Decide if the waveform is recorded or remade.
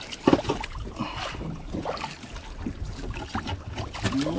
recorded